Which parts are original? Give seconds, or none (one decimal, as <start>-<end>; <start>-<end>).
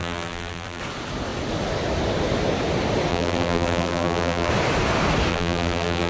0.8-3.1; 4.5-5.3